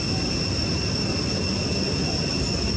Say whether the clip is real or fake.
real